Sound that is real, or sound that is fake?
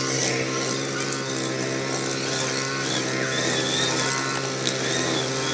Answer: real